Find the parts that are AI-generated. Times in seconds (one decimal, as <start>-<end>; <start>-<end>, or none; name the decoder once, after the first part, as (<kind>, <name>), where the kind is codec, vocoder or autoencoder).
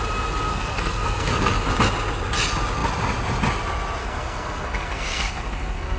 0.5-1.6 (codec, SNAC); 4.0-6.0